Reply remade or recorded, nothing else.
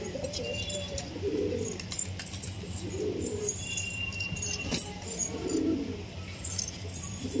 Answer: remade